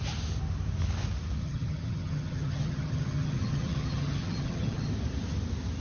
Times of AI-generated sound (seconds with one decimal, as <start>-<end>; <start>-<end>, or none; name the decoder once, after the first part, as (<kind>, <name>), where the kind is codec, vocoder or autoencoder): 1.4-4.9 (vocoder, HiFi-GAN)